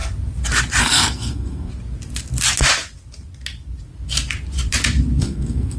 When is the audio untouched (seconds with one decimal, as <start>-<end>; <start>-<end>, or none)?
0.0-0.8; 1.7-5.2